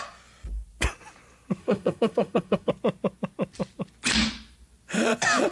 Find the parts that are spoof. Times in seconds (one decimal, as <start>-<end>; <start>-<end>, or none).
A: 1.6-2.7